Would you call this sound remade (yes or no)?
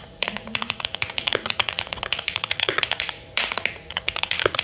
yes